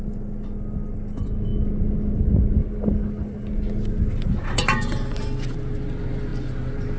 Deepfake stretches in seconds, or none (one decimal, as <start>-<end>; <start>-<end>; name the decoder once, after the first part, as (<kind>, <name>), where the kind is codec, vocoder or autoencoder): none